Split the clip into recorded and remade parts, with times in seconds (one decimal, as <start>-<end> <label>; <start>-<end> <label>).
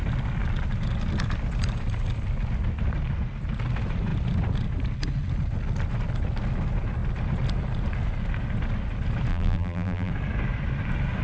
0.0-9.3 recorded; 9.3-10.1 remade; 10.1-11.2 recorded